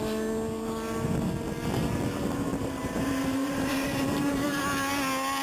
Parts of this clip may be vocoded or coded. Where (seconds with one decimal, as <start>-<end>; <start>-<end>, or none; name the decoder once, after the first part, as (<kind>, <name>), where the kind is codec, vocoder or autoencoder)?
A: 2.5-4.6 (vocoder, BigVGAN v2)